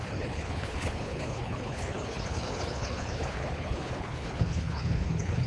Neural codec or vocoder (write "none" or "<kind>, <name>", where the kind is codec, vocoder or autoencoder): codec, HILCodec